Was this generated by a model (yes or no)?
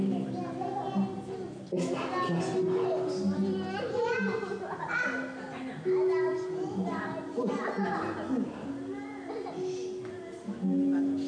no